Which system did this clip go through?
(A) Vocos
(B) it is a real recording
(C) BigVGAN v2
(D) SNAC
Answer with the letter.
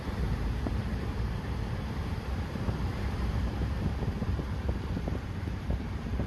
C